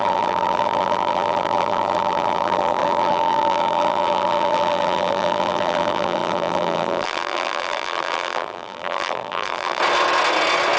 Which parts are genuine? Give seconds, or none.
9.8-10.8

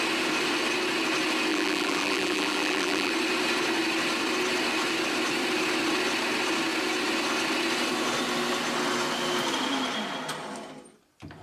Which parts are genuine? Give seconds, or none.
0.0-1.5; 3.1-11.4